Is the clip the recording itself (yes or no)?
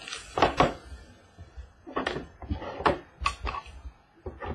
yes